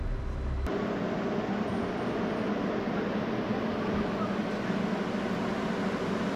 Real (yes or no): yes